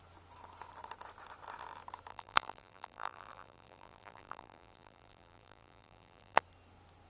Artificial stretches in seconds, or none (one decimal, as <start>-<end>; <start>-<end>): 2.1-6.4